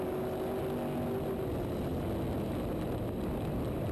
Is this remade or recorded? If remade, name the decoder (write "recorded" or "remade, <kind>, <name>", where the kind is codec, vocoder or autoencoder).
recorded